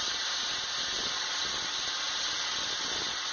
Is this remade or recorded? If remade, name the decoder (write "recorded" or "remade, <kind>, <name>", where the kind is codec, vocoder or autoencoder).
recorded